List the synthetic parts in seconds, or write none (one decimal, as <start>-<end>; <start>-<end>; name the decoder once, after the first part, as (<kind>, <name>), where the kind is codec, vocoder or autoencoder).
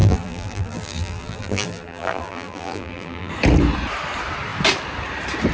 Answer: 0.0-3.3 (vocoder, BigVGAN v2)